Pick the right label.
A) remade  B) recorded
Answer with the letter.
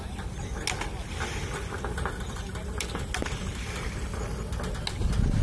B